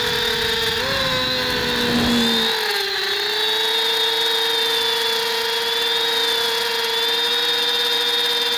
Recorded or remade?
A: recorded